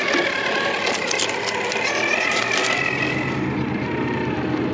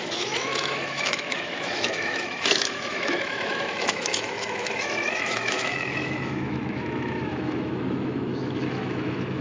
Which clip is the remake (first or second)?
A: second